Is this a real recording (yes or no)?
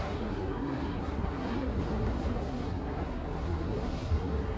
no